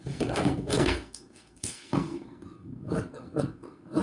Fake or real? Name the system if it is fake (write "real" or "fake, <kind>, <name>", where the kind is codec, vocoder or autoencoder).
fake, codec, SNAC